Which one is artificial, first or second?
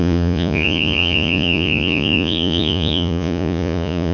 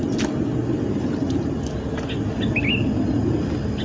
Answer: first